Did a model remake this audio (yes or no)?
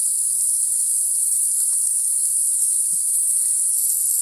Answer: yes